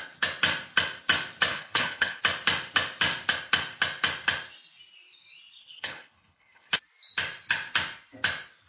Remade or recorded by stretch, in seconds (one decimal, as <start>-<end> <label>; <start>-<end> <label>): 0.0-1.5 recorded; 1.5-2.2 remade; 2.2-5.6 recorded; 5.6-6.7 remade; 6.7-8.7 recorded